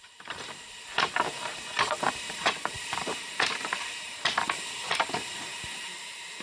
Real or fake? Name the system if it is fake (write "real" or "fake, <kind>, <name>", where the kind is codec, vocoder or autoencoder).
fake, vocoder, BigVGAN v2